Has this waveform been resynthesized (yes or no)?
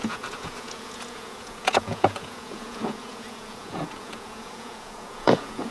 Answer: yes